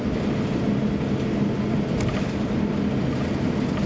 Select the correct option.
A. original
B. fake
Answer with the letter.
A